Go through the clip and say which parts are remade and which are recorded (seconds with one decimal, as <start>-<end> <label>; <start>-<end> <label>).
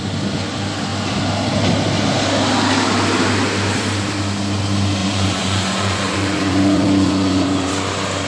0.0-5.0 recorded; 5.0-7.7 remade; 7.7-8.3 recorded